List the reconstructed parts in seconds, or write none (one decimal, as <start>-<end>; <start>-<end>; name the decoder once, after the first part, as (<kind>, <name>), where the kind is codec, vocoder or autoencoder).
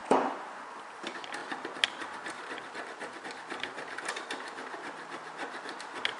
0.0-0.7 (vocoder, Vocos)